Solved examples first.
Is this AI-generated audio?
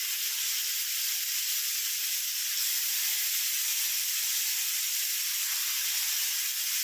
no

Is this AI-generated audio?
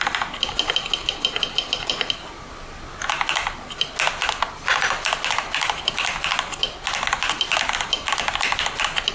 no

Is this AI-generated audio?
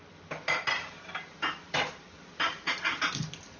no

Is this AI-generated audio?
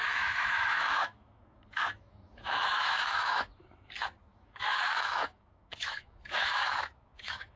yes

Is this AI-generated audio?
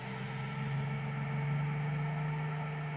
no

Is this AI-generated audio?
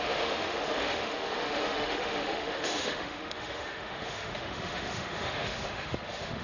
yes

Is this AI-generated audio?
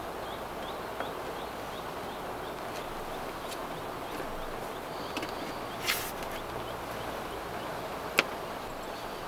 no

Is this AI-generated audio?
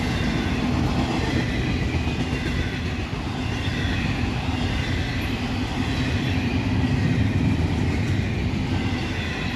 no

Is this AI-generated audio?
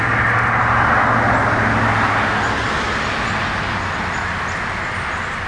no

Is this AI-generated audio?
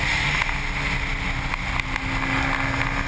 no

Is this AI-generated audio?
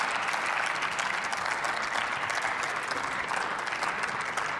no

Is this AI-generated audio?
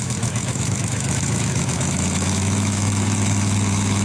yes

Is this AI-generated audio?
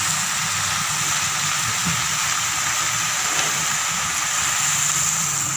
no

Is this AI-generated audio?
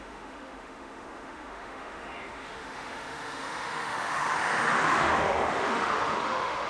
yes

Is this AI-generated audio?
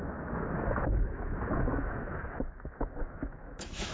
yes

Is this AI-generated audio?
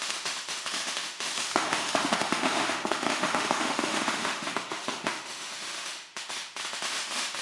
yes